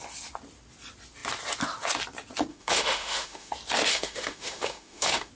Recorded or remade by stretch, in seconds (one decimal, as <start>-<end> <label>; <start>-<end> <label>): 0.0-2.5 recorded; 2.5-3.5 remade; 3.5-3.9 recorded; 3.9-5.3 remade